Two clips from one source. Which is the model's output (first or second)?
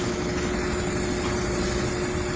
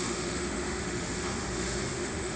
second